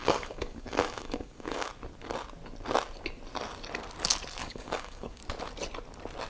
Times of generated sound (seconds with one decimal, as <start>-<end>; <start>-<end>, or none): 0.0-1.7; 4.4-5.2